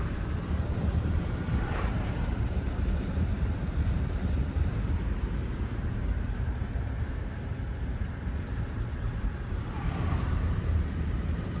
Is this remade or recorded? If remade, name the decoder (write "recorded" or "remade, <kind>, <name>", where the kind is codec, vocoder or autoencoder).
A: remade, vocoder, BigVGAN v2